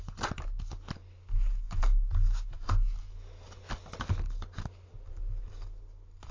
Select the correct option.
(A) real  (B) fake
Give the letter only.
A